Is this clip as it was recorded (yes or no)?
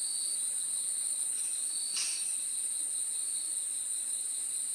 yes